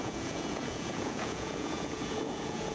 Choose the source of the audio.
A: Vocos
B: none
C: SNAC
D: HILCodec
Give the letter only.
A